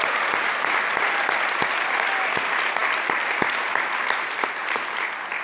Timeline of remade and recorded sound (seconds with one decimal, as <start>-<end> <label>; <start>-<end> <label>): 0.0-5.4 recorded